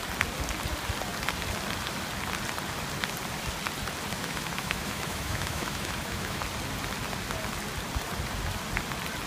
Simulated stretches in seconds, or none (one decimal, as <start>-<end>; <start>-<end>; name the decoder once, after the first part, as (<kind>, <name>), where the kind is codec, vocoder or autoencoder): 4.2-6.4 (autoencoder, DAC-VAE)

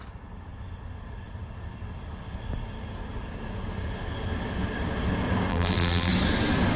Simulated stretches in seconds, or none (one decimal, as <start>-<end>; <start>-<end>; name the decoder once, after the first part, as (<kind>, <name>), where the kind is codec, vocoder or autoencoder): 5.5-6.1 (vocoder, BigVGAN v2)

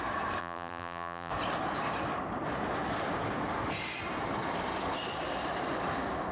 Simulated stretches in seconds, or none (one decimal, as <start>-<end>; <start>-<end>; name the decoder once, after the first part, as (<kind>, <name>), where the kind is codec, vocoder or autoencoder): 0.4-1.3 (vocoder, BigVGAN v2)

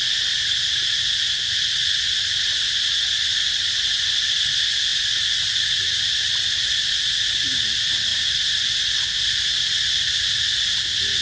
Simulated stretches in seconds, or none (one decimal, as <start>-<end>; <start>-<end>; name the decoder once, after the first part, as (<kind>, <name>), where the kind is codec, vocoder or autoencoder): none

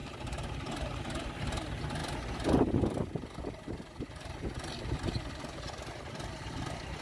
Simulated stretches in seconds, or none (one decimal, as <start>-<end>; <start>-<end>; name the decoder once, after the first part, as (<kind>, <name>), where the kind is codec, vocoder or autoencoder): 0.0-1.0 (vocoder, BigVGAN v2)